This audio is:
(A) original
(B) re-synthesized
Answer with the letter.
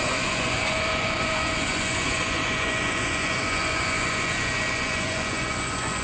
B